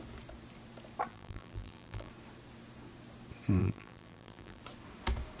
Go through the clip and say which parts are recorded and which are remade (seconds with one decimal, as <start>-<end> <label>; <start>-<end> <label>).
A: 0.0-1.1 recorded; 1.1-2.1 remade; 2.1-3.6 recorded; 3.6-4.6 remade; 4.6-5.4 recorded